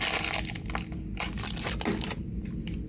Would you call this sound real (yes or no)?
yes